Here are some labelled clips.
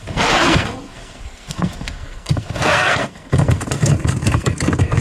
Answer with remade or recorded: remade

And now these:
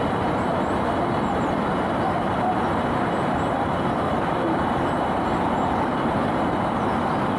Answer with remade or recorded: remade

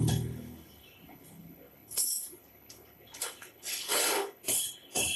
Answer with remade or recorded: remade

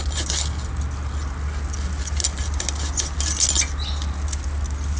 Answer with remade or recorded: recorded